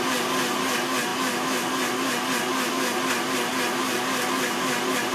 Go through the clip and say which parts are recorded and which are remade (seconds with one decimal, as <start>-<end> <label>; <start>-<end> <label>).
0.0-5.1 recorded

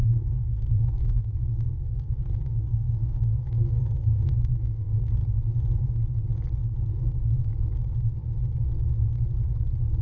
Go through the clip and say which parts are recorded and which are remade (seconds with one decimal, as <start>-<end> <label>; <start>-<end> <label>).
0.0-5.1 remade; 5.1-10.0 recorded

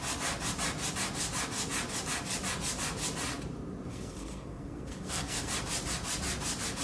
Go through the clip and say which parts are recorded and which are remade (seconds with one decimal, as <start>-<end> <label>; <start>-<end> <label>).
0.0-3.9 recorded; 3.9-5.5 remade; 5.5-6.8 recorded

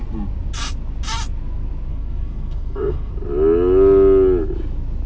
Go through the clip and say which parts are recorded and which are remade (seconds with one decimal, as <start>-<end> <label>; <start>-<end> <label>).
0.0-1.9 recorded; 1.9-3.1 remade; 3.1-5.1 recorded

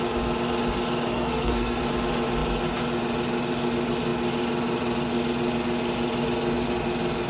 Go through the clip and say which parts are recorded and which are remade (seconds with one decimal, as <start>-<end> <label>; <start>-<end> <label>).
0.0-1.1 recorded; 1.1-1.8 remade; 1.8-7.3 recorded

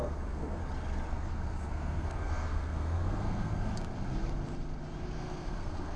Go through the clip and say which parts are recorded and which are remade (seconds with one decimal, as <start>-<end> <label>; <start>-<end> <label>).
0.0-0.6 remade; 0.6-1.1 recorded; 1.1-3.7 remade; 3.7-5.1 recorded; 5.1-6.0 remade

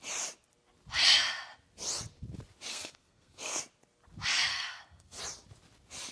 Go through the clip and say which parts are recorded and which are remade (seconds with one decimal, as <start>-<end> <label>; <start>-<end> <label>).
0.0-2.7 recorded; 2.7-3.6 remade; 3.6-4.5 recorded; 4.5-5.2 remade; 5.2-6.1 recorded